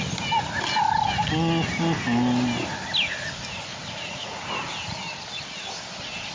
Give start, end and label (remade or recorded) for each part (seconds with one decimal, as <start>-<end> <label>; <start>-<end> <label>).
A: 0.0-3.7 recorded; 3.7-4.5 remade; 4.5-6.3 recorded